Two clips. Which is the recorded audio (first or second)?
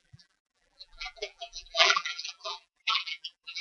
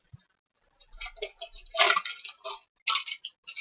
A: second